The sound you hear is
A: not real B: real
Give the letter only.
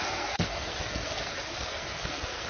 A